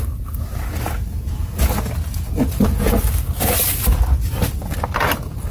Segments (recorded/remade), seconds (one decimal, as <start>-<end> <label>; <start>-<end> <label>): 0.0-5.5 recorded